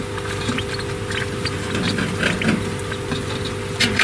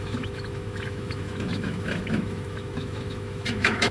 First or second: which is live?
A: first